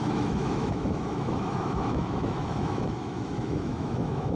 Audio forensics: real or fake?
fake